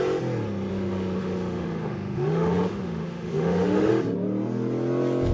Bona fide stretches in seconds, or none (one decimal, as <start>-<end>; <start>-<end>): 0.0-0.7; 3.9-5.3